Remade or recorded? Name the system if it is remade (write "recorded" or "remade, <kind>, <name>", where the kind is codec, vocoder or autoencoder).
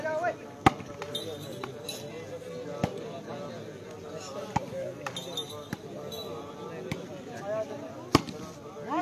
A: recorded